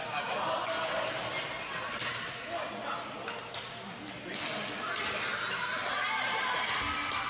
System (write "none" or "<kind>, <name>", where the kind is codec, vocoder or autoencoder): none